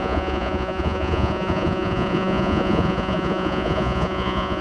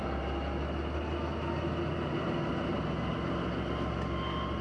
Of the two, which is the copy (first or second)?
first